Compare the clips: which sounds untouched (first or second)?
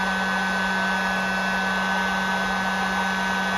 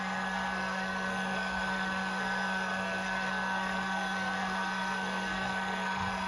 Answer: first